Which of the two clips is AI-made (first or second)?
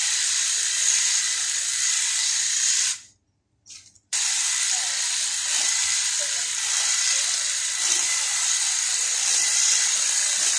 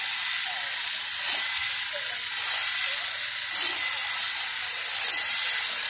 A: first